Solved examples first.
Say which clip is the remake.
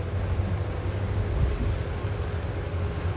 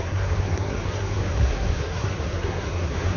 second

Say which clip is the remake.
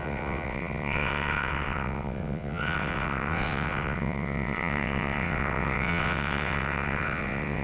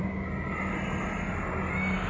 first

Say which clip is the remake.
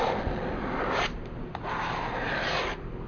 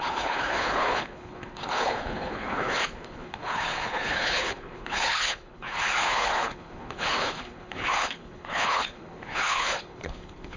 second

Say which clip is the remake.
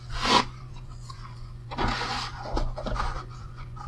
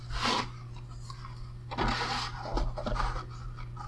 first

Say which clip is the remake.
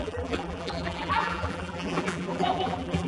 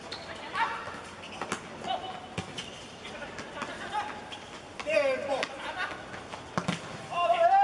first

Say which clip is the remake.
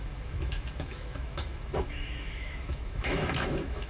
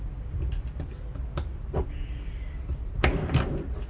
first